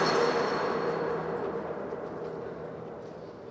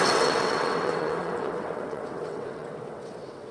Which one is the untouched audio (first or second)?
first